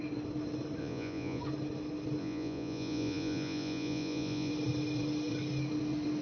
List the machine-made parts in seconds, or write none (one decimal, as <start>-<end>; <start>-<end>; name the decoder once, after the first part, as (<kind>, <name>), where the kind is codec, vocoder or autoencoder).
0.8-1.4 (vocoder, Vocos); 2.2-4.5